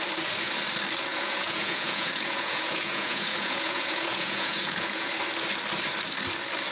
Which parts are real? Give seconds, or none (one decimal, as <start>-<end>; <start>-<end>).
0.0-1.1; 5.1-6.7

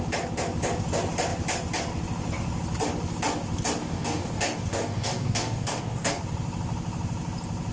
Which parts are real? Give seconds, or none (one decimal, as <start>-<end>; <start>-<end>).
0.0-3.8; 6.2-7.7

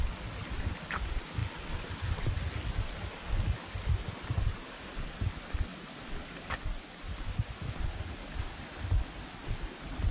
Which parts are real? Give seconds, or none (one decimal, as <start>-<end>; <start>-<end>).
0.0-10.1

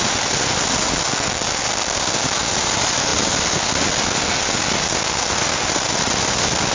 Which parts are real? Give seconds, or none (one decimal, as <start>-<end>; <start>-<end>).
0.0-6.7